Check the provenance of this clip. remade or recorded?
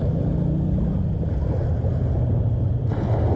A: recorded